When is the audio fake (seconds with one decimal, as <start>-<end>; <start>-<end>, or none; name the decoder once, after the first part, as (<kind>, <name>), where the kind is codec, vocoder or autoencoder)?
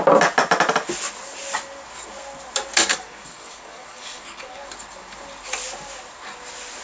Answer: 2.9-4.6 (codec, DAC)